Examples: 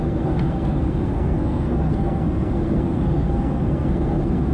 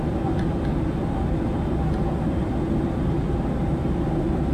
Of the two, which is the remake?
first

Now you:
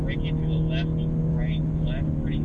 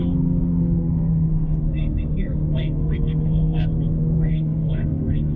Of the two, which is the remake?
second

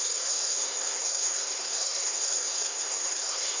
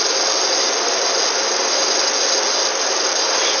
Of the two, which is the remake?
first